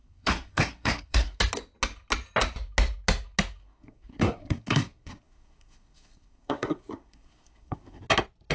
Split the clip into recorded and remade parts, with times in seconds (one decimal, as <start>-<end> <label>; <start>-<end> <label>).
0.0-1.4 remade; 1.4-3.6 recorded; 3.6-8.0 remade; 8.0-8.5 recorded